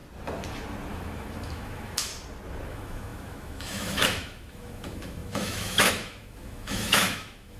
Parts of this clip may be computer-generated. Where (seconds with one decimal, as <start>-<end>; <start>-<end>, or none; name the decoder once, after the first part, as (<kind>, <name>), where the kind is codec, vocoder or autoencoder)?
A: 0.9-2.1 (autoencoder, DAC-VAE); 2.7-7.6